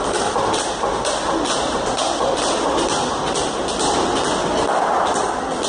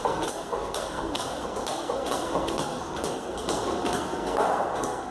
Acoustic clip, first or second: first